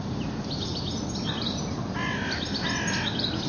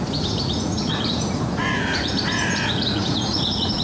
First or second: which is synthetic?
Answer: second